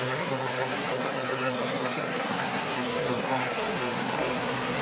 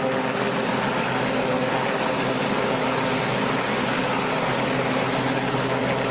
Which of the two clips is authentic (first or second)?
second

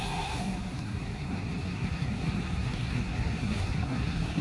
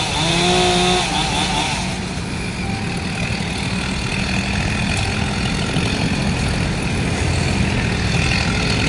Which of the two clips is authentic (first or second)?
second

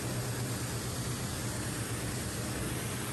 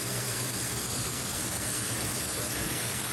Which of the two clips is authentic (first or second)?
first